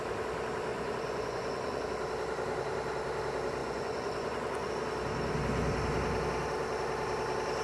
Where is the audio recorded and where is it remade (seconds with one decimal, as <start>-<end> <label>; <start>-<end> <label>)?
0.0-0.7 recorded; 0.7-1.8 remade; 1.8-3.6 recorded; 3.6-4.7 remade; 4.7-7.6 recorded